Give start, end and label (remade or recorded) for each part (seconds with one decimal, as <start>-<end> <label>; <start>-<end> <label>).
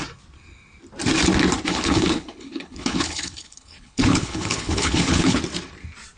0.0-1.7 recorded; 1.7-5.4 remade; 5.4-6.2 recorded